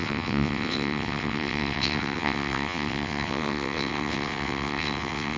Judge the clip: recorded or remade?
remade